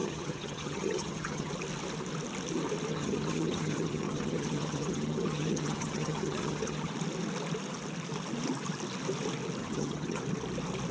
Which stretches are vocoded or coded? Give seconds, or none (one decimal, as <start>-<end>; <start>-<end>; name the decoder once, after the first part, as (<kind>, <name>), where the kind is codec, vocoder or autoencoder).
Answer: 0.0-1.5 (vocoder, HiFi-GAN); 2.9-6.9; 9.6-10.2